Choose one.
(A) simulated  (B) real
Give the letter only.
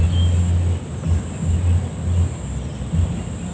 B